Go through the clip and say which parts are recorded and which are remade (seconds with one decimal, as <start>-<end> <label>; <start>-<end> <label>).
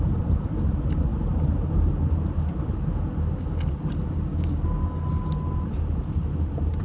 0.0-4.3 recorded; 4.3-5.0 remade; 5.0-6.8 recorded